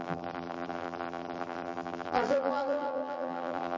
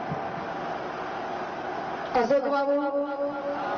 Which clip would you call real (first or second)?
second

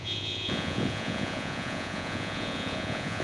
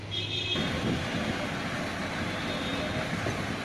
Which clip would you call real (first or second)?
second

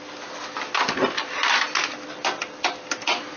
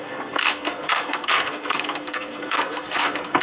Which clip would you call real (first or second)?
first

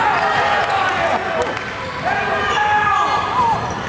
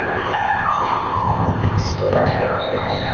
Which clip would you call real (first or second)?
first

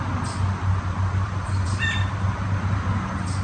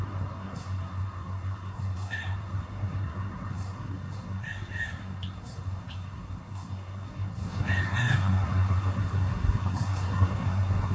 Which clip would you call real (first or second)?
first